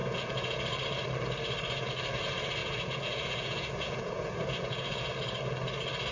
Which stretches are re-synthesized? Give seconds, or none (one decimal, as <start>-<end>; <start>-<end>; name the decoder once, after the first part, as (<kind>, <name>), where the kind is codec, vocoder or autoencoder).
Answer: 0.0-0.6 (vocoder, Vocos); 2.6-5.1